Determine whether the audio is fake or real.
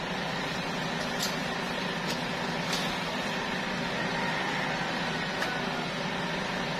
real